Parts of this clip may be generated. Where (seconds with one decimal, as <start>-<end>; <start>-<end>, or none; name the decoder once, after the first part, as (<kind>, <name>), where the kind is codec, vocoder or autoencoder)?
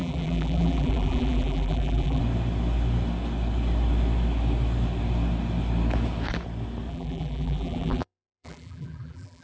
0.0-2.2 (vocoder, BigVGAN v2); 6.9-9.4